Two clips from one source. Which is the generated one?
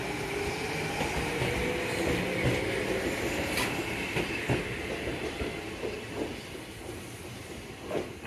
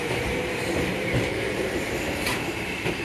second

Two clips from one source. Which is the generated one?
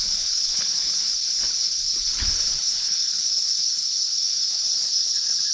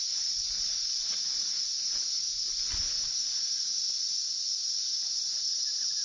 first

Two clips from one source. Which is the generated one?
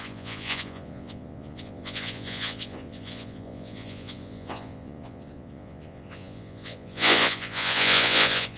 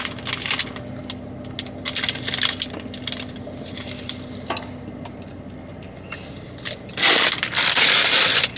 first